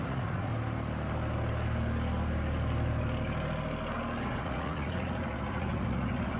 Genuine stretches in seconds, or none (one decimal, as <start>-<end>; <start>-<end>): 0.5-4.2